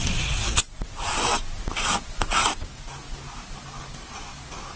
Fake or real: real